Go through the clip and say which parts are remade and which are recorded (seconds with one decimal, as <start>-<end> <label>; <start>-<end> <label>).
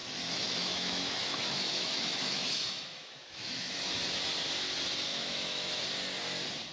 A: 0.0-4.0 remade; 4.0-5.1 recorded; 5.1-5.7 remade; 5.7-6.7 recorded